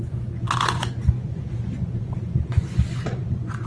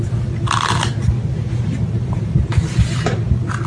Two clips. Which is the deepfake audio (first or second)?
first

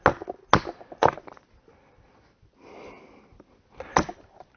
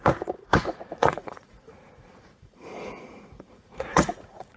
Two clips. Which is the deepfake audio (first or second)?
second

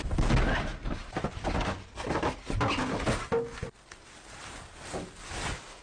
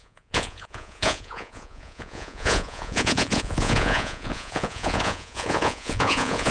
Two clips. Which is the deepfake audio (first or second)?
second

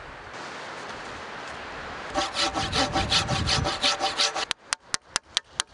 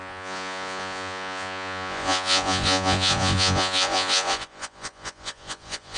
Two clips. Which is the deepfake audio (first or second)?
second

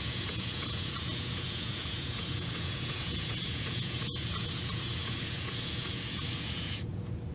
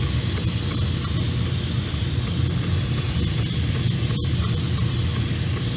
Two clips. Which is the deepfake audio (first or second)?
first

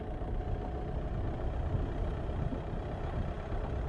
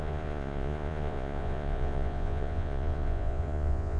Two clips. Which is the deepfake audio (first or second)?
second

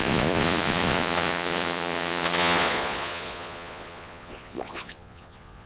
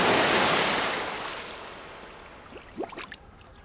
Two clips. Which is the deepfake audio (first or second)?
first